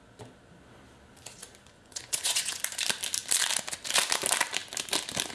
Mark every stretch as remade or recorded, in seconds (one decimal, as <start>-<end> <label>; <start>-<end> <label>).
0.0-1.7 recorded; 1.7-2.6 remade; 2.6-5.3 recorded